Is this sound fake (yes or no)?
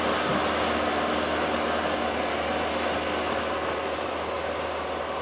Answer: no